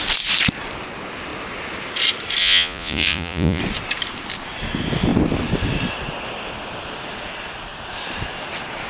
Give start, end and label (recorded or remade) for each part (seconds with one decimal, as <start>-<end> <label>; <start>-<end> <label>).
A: 0.0-2.4 recorded; 2.4-3.6 remade; 3.6-8.9 recorded

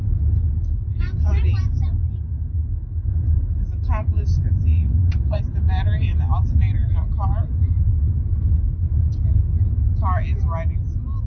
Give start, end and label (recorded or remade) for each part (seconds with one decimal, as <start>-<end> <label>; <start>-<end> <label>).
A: 0.0-4.7 recorded; 4.7-5.4 remade; 5.4-11.3 recorded

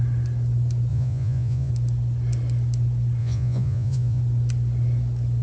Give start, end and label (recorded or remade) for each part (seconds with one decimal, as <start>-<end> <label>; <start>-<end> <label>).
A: 0.0-0.9 recorded; 0.9-1.7 remade; 1.7-3.2 recorded; 3.2-4.2 remade; 4.2-5.4 recorded

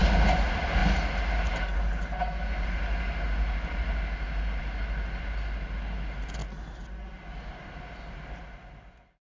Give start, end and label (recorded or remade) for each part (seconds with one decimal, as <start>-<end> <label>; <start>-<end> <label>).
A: 0.0-9.3 recorded

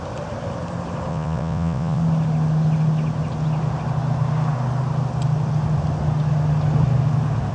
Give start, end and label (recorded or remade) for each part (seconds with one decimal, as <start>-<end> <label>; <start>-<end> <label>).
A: 0.0-1.1 recorded; 1.1-2.0 remade; 2.0-7.5 recorded

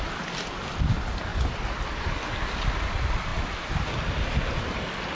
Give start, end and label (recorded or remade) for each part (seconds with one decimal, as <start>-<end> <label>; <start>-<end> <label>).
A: 0.0-5.1 recorded

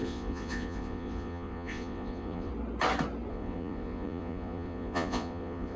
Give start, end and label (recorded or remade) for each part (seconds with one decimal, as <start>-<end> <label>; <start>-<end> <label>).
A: 0.0-2.5 remade; 2.5-3.3 recorded; 3.3-5.8 remade